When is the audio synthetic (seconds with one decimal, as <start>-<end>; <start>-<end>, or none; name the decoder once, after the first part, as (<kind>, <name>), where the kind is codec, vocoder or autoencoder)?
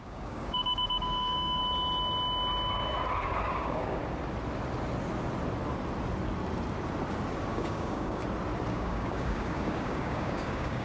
0.0-1.6 (codec, DAC); 3.5-4.0; 7.5-8.2; 8.7-10.8